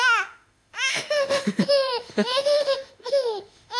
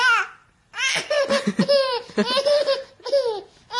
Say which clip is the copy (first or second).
first